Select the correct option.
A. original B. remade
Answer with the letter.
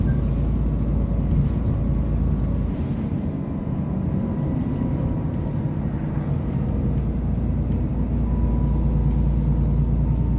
A